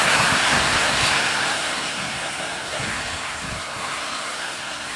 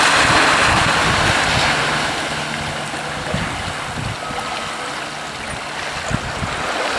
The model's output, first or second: first